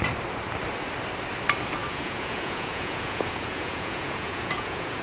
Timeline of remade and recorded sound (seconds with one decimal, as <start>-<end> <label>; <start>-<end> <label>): 0.0-1.8 recorded; 1.8-5.0 remade